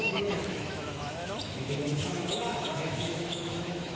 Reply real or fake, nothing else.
fake